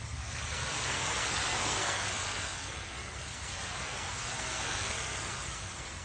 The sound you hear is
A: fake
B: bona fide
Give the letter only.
A